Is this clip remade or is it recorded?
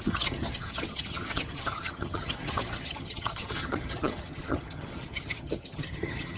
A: remade